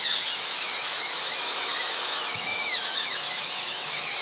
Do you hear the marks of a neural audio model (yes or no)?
yes